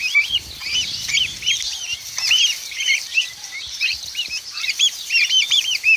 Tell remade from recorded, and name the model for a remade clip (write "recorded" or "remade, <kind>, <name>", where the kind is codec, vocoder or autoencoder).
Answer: remade, vocoder, BigVGAN v2